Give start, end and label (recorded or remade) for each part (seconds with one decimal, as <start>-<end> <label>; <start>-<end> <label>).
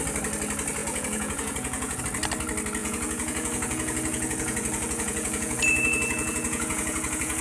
0.0-0.8 recorded; 0.8-2.0 remade; 2.0-2.8 recorded; 2.8-7.4 remade